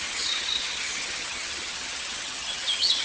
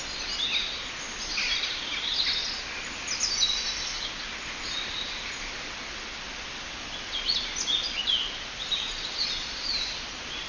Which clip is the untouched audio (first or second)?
second